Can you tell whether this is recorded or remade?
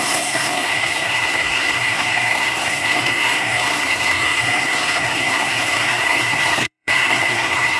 remade